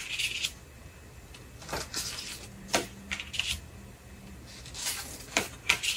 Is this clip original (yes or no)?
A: yes